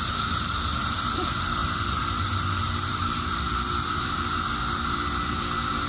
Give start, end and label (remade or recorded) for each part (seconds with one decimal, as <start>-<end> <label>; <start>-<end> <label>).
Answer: 0.0-1.6 recorded; 1.6-4.4 remade; 4.4-5.9 recorded